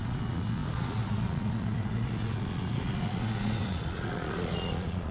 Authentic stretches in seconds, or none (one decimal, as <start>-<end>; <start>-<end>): none